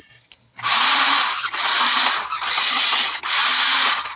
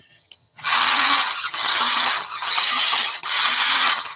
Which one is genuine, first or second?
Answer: first